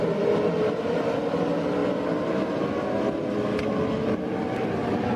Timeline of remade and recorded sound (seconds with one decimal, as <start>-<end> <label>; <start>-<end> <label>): 0.0-5.2 recorded

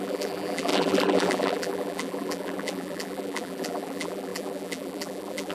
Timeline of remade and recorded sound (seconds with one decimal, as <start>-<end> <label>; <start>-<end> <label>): 0.0-5.5 remade

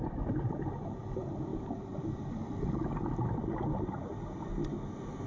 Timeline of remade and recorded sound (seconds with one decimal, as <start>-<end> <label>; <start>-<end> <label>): 0.0-1.5 recorded; 1.5-2.6 remade; 2.6-5.3 recorded

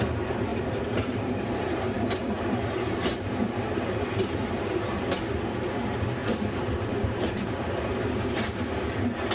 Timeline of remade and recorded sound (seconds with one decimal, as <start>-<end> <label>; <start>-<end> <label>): 0.0-0.5 recorded; 0.5-5.0 remade; 5.0-6.2 recorded; 6.2-8.0 remade; 8.0-9.3 recorded

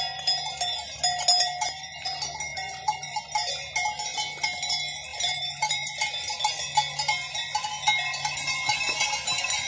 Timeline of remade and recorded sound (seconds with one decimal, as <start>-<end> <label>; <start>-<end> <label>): 0.0-2.5 recorded; 2.5-3.5 remade; 3.5-5.1 recorded; 5.1-6.1 remade; 6.1-9.7 recorded

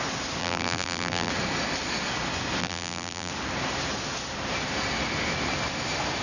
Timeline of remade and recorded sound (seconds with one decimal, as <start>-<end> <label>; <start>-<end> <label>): 0.0-0.4 recorded; 0.4-1.3 remade; 1.3-2.6 recorded; 2.6-3.3 remade; 3.3-6.2 recorded